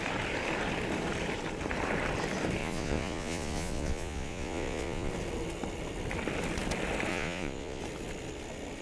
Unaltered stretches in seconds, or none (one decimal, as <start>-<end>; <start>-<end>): 0.0-2.6; 5.1-7.1; 7.8-8.8